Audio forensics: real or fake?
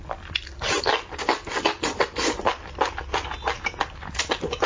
real